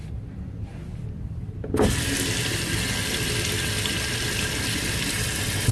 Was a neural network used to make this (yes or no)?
no